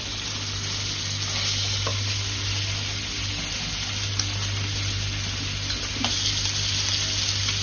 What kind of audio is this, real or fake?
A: real